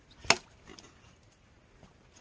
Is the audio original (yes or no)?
yes